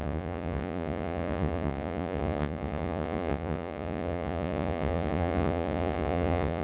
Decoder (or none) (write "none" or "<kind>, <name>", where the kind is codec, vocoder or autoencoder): vocoder, Vocos